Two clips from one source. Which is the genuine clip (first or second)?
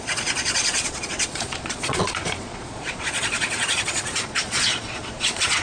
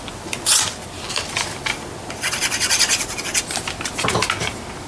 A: second